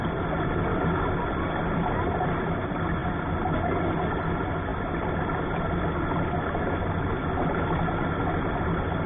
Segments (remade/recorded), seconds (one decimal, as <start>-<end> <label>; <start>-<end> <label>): 0.0-9.1 recorded